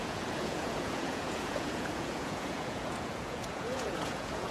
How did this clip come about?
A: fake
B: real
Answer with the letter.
A